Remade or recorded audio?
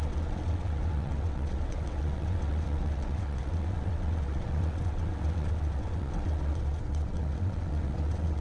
remade